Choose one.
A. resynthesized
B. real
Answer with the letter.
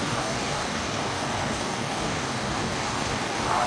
A